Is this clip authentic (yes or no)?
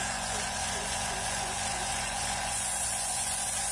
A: no